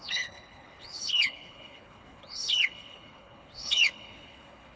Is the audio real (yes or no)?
no